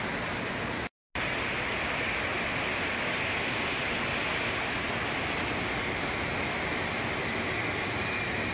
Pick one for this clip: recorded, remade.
recorded